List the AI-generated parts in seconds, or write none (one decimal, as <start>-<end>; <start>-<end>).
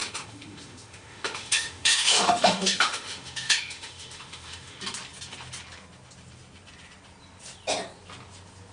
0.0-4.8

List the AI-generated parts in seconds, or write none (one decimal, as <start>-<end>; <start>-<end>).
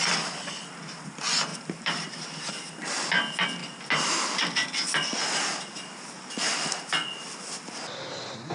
1.5-2.5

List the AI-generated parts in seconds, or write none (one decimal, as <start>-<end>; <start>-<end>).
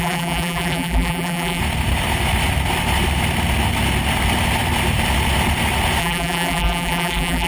0.0-1.6; 6.0-7.5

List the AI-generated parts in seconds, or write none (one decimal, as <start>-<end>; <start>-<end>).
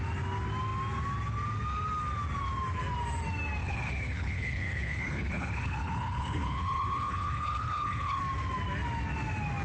3.6-8.2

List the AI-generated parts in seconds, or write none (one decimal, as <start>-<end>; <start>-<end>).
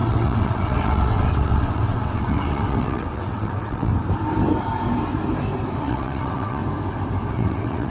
0.0-3.9; 5.8-6.6; 7.3-7.9